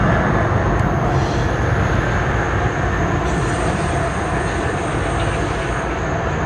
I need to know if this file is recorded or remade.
recorded